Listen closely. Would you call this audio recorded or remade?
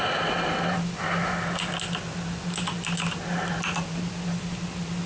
recorded